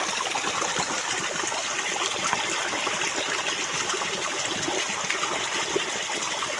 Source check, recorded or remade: recorded